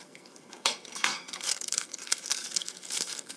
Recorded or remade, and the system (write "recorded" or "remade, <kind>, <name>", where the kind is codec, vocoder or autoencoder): remade, codec, SNAC